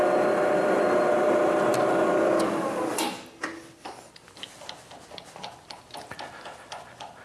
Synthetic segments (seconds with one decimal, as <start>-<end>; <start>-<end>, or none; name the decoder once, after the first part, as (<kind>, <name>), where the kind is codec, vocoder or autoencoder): none